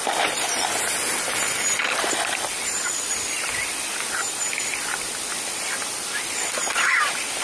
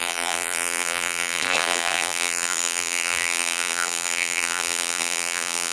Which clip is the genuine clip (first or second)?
first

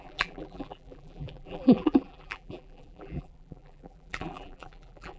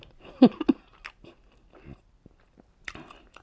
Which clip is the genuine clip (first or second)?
second